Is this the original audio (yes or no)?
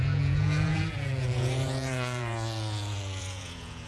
no